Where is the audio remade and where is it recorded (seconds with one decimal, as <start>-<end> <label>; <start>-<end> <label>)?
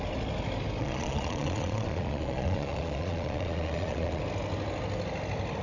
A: 0.0-0.8 recorded; 0.8-4.2 remade; 4.2-5.6 recorded